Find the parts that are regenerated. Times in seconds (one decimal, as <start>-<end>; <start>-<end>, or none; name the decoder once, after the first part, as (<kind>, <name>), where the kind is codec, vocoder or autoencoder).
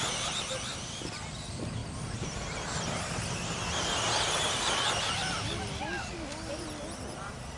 none